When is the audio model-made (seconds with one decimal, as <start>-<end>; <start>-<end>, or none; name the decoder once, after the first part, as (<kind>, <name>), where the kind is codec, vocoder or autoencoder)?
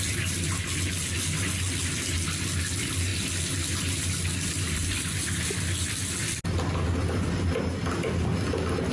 none